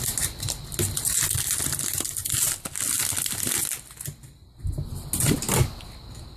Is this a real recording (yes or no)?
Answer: yes